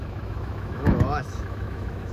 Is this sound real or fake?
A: fake